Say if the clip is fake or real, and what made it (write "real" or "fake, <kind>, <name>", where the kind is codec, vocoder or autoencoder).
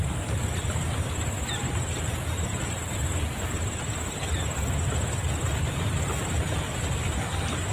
real